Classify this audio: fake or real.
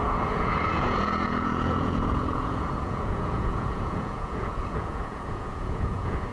fake